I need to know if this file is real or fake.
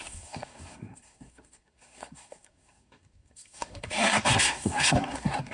fake